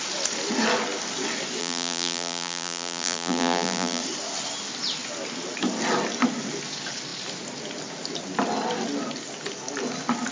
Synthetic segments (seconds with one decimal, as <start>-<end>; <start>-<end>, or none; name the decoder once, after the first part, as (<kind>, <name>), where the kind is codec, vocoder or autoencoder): 1.6-4.0 (vocoder, BigVGAN v2)